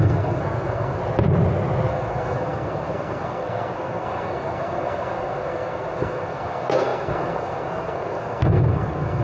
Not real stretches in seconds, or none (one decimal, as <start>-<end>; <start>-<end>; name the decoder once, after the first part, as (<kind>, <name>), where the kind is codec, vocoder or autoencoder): 0.0-1.0 (codec, SNAC); 1.9-9.2